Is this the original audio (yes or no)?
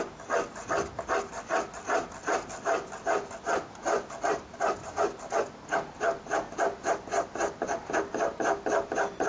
yes